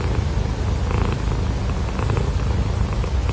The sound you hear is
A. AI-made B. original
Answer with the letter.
B